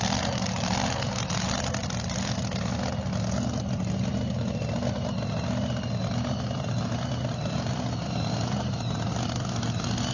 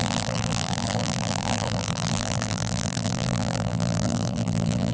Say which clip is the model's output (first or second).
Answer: second